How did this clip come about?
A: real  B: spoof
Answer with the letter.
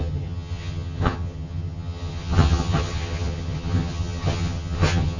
B